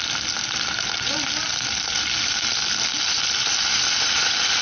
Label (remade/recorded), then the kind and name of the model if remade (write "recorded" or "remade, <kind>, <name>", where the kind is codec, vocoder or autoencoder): recorded